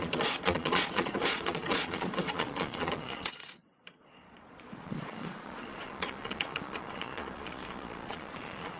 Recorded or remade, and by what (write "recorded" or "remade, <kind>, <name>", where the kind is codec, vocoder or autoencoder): remade, vocoder, Vocos